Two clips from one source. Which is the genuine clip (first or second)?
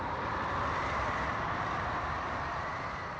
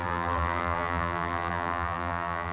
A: first